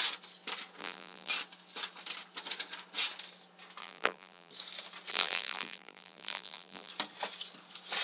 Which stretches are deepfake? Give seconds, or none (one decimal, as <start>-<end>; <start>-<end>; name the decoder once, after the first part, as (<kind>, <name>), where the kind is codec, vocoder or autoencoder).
0.8-1.3 (vocoder, BigVGAN v2); 3.8-4.5; 5.1-6.9